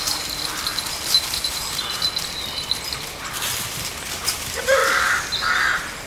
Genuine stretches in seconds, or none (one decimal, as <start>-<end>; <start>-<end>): 0.0-6.1